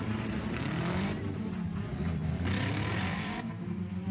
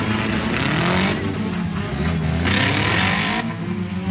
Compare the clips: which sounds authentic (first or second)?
second